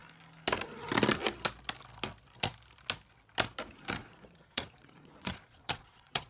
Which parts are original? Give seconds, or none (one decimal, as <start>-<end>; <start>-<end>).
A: 0.0-4.0